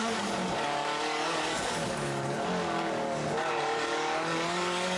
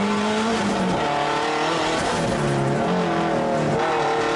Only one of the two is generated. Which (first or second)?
first